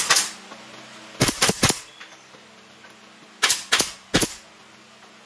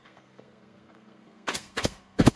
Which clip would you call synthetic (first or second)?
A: second